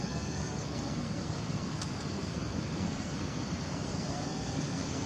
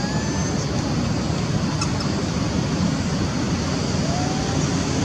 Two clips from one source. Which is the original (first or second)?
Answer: second